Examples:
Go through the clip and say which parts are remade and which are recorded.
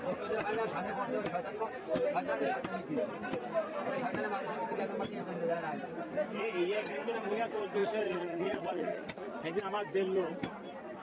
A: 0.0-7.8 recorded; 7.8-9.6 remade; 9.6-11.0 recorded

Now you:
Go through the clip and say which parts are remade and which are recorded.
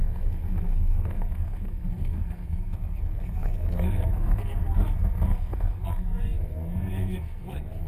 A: 0.0-7.9 remade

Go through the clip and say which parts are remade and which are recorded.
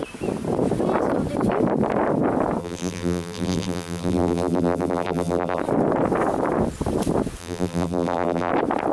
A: 0.0-2.6 recorded; 2.6-5.6 remade; 5.6-7.4 recorded; 7.4-8.5 remade; 8.5-8.9 recorded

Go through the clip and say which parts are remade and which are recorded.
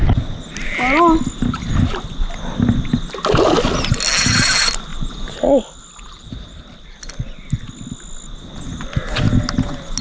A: 0.0-4.9 recorded; 4.9-7.1 remade; 7.1-10.0 recorded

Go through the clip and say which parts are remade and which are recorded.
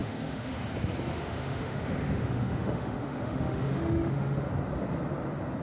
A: 0.0-0.6 remade; 0.6-1.1 recorded; 1.1-4.5 remade; 4.5-5.6 recorded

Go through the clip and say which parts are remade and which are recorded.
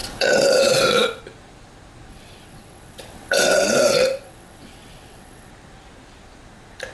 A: 0.0-1.2 remade; 1.2-2.1 recorded; 2.1-5.5 remade; 5.5-6.9 recorded